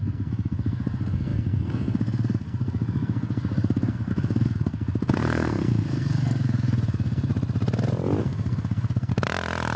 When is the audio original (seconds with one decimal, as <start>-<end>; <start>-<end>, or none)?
7.3-8.2; 9.1-9.8